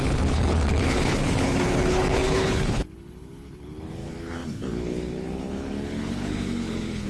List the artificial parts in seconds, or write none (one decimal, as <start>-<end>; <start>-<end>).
0.0-7.1